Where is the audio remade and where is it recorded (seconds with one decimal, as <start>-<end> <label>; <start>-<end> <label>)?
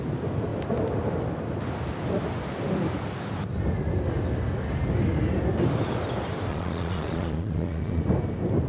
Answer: 0.0-6.5 recorded; 6.5-8.0 remade; 8.0-8.7 recorded